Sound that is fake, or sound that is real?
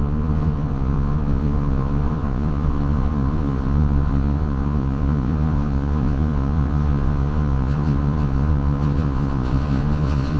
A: fake